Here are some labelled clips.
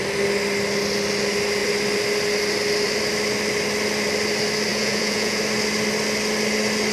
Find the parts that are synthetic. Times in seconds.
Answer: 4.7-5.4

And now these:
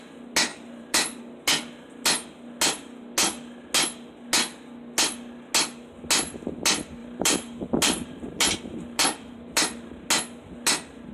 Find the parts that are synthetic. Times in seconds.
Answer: 0.5-1.2; 7.0-9.9

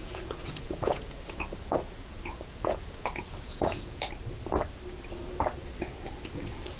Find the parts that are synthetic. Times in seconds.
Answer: 0.0-4.1

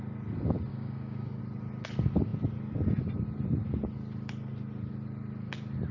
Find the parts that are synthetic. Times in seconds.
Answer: 0.7-1.4

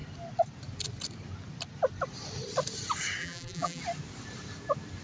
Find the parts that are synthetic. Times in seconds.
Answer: 3.2-3.8

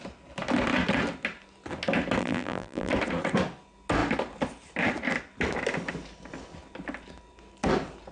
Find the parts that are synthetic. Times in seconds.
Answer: 2.2-2.9

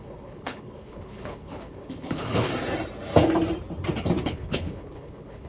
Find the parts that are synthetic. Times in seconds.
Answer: 0.0-2.5; 4.2-5.5